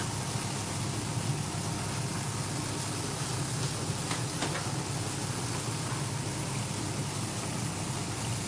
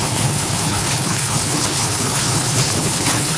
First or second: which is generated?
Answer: second